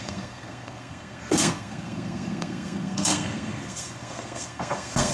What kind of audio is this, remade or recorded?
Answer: remade